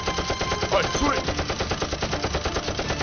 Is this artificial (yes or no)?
no